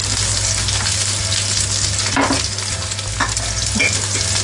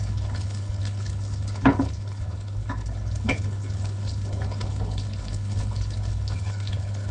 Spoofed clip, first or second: second